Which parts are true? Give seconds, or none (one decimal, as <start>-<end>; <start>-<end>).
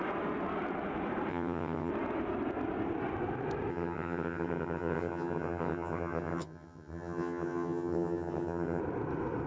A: 0.0-1.3; 1.9-3.7; 8.8-9.5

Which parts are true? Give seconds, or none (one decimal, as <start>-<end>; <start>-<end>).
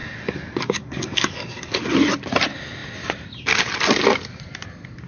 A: 1.8-5.1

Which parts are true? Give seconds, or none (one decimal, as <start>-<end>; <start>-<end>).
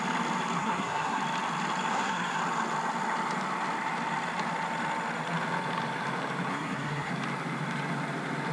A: 0.0-0.6; 1.2-1.9; 2.4-6.5; 7.1-8.5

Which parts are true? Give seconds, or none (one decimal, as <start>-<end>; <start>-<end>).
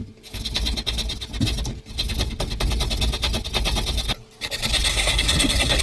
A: 0.0-4.9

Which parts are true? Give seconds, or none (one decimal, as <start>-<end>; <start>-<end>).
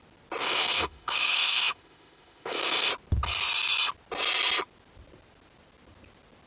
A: 0.0-0.4; 2.9-6.5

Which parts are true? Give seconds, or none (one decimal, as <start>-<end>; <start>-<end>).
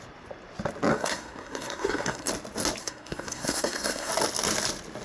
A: 0.0-0.9; 2.3-2.8; 4.1-5.0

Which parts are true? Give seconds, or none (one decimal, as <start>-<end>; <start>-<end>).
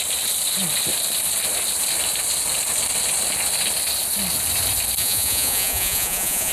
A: 0.0-5.0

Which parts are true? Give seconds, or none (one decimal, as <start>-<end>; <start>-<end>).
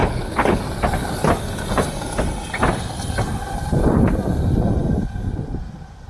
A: 0.6-6.1